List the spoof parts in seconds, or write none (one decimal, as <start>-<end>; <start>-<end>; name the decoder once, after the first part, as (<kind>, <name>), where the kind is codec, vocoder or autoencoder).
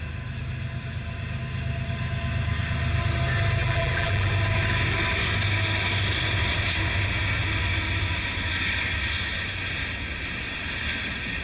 3.6-4.3 (vocoder, BigVGAN v2)